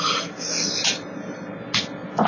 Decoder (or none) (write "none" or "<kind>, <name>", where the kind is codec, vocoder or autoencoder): none